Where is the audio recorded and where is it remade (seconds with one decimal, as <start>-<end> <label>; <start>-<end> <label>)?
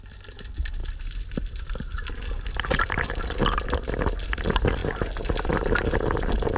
0.0-6.6 recorded